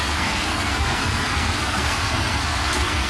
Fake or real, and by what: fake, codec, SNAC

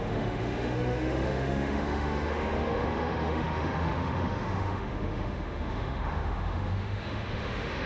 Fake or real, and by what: fake, autoencoder, DAC-VAE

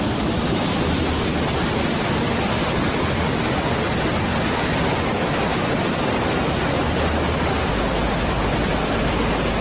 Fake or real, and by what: real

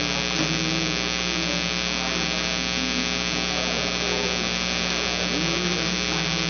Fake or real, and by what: real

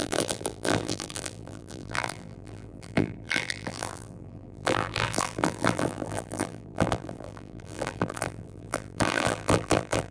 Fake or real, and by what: fake, vocoder, BigVGAN v2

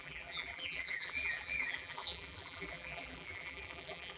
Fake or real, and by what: fake, vocoder, BigVGAN v2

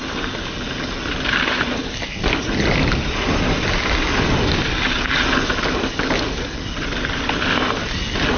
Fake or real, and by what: real